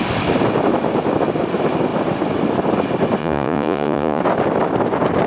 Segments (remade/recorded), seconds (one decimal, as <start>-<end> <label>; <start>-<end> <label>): 0.0-3.2 recorded; 3.2-4.2 remade; 4.2-5.3 recorded